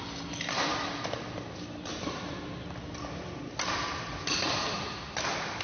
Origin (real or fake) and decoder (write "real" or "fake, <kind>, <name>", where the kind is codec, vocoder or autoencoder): real